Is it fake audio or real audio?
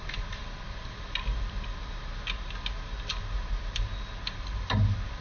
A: real